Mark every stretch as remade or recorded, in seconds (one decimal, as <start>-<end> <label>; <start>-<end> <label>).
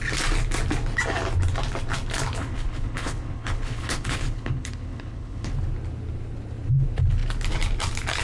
0.0-2.4 recorded; 2.4-5.5 remade; 5.5-8.2 recorded